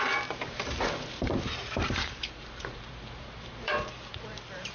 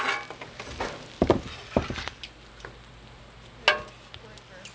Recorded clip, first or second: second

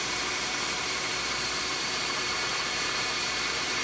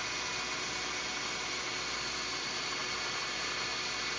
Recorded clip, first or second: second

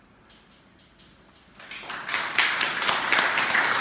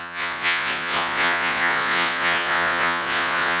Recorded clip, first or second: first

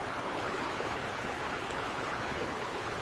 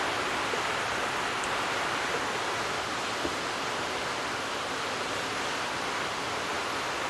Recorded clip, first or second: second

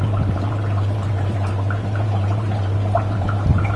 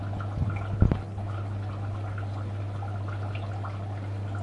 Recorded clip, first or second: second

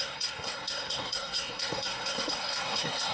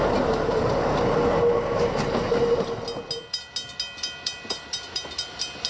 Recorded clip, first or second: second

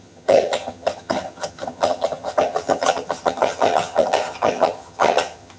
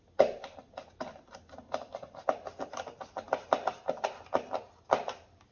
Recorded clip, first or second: second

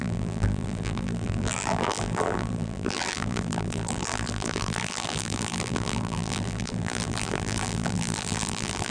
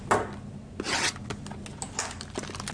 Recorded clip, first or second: second